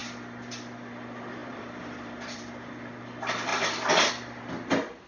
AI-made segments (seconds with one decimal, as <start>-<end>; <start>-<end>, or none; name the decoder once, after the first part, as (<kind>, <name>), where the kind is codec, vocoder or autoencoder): 1.4-2.5 (vocoder, BigVGAN v2); 3.5-4.1